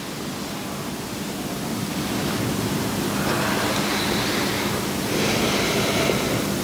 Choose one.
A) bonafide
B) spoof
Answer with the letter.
A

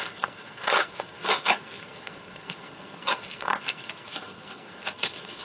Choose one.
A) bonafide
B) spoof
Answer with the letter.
B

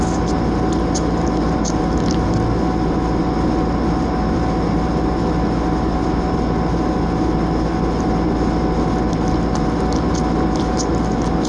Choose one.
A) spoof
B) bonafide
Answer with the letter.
B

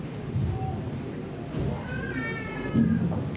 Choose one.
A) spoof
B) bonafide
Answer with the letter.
B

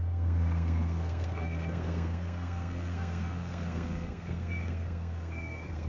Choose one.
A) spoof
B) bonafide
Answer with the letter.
A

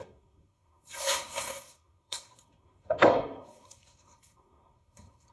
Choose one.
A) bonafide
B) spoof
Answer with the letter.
B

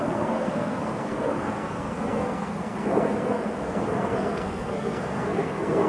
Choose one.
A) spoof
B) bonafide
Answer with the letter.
A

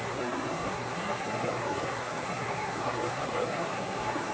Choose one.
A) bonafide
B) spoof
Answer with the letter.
B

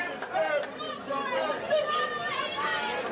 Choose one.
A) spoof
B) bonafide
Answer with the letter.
B